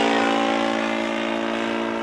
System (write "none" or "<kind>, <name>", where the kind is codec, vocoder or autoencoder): none